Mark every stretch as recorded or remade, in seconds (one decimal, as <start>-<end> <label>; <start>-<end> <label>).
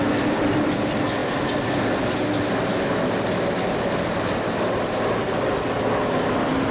0.0-6.7 recorded